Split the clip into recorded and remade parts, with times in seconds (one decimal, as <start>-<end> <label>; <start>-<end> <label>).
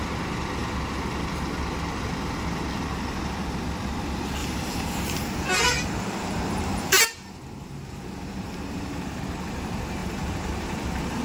0.0-4.4 recorded; 4.4-9.2 remade; 9.2-10.0 recorded; 10.0-11.2 remade